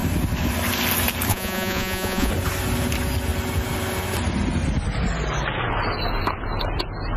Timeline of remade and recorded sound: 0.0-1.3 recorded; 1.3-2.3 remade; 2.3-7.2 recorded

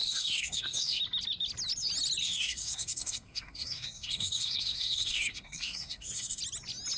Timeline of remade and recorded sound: 0.0-1.0 remade; 1.0-2.2 recorded; 2.2-6.4 remade; 6.4-7.0 recorded

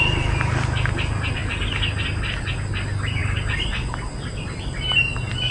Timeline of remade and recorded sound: 0.0-5.5 recorded

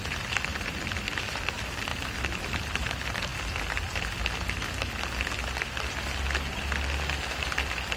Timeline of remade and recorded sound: 0.0-1.9 remade; 1.9-2.4 recorded; 2.4-3.3 remade; 3.3-7.2 recorded; 7.2-8.0 remade

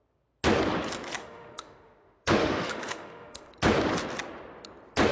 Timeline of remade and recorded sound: 0.0-1.2 recorded; 1.2-3.5 remade; 3.5-5.1 recorded

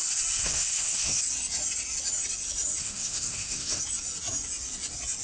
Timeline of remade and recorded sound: 0.0-0.4 recorded; 0.4-1.2 remade; 1.2-2.8 recorded; 2.8-3.8 remade; 3.8-5.2 recorded

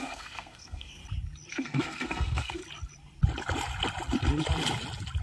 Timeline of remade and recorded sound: 0.0-1.0 remade; 1.0-1.5 recorded; 1.5-2.6 remade; 2.6-5.2 recorded